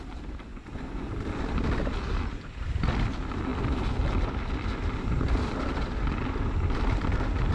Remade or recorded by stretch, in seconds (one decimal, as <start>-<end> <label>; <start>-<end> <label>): 0.0-0.5 recorded; 0.5-1.1 remade; 1.1-7.5 recorded